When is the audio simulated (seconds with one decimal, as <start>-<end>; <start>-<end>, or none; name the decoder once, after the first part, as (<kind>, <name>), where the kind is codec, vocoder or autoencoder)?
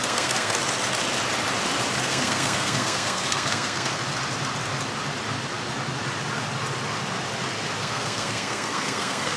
0.0-0.6 (codec, SNAC); 2.0-4.0; 7.8-9.4